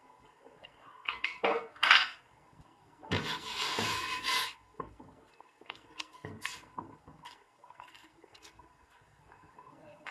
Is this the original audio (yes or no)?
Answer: no